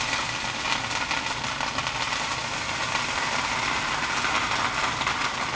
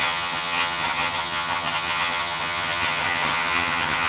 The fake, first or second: second